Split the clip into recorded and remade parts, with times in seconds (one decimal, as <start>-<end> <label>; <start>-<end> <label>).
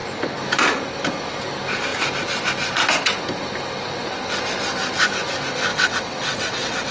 0.0-5.7 recorded; 5.7-6.9 remade